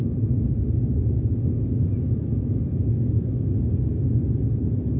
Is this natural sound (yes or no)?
yes